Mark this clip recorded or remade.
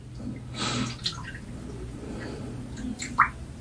recorded